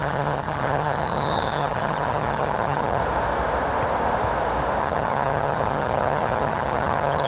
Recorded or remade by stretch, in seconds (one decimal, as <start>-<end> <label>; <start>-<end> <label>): 0.0-3.0 remade; 3.0-4.8 recorded; 4.8-7.3 remade